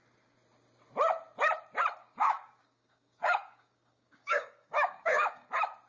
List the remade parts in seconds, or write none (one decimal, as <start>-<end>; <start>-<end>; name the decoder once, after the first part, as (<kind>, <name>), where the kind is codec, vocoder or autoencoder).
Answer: 2.0-5.5 (codec, DAC)